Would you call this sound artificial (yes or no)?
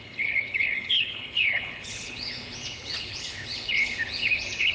yes